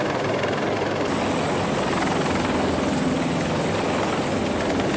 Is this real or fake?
real